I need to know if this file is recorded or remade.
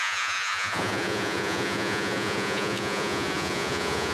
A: remade